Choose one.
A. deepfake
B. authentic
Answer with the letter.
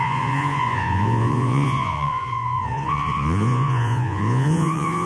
A